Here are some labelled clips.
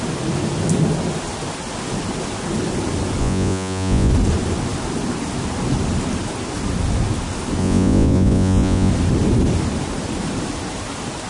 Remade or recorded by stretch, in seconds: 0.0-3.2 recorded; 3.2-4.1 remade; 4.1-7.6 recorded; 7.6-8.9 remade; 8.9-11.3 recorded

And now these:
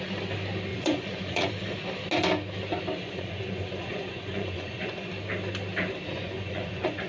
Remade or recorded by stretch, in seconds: 0.0-0.7 recorded; 0.7-1.5 remade; 1.5-3.0 recorded; 3.0-5.1 remade; 5.1-6.1 recorded; 6.1-7.1 remade

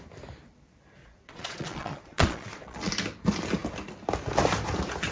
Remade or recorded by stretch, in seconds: 0.0-1.0 recorded; 1.0-2.9 remade; 2.9-5.1 recorded

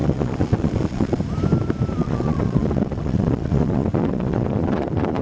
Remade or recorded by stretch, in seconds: 0.0-1.2 remade; 1.2-2.0 recorded; 2.0-5.2 remade